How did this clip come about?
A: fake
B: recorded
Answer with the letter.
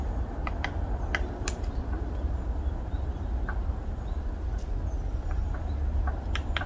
B